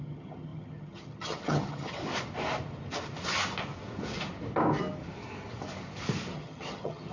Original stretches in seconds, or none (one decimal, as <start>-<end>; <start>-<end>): 2.0-6.3